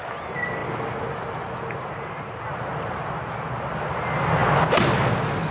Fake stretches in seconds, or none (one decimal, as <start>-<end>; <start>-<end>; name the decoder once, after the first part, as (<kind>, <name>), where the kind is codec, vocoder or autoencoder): none